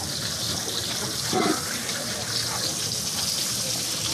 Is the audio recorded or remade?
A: recorded